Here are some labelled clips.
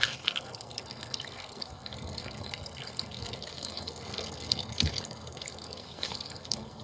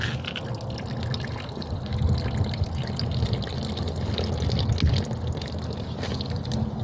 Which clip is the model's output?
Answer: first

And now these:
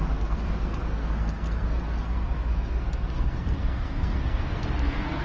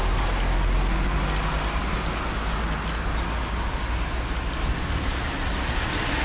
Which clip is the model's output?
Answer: first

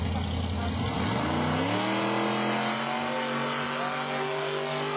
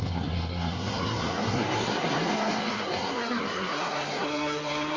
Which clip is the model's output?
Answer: second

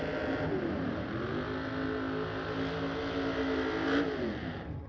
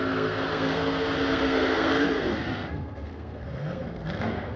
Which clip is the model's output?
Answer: second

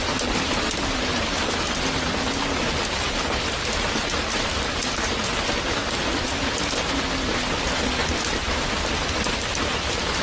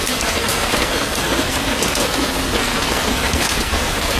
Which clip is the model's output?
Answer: second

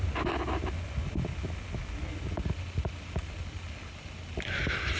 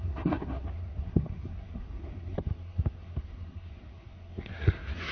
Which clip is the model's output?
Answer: second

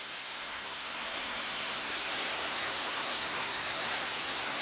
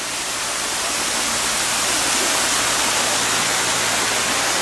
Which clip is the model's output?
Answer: first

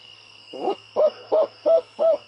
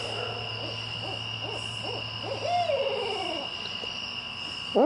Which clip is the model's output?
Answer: first